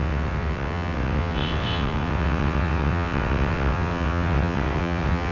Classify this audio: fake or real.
fake